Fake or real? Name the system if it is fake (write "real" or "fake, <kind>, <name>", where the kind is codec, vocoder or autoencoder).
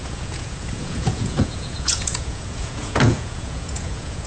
fake, vocoder, Vocos